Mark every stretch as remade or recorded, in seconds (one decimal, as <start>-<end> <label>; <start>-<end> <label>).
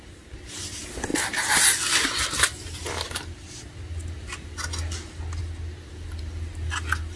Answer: 0.0-7.2 recorded